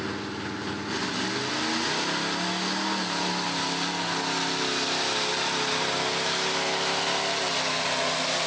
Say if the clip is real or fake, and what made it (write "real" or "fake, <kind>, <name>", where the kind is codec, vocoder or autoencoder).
real